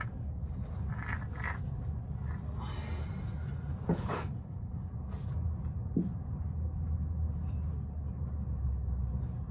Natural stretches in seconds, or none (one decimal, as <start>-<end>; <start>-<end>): 0.0-3.9; 4.9-9.5